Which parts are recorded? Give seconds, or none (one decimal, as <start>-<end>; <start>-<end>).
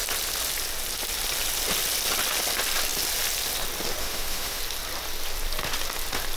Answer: 0.0-4.0; 4.6-6.4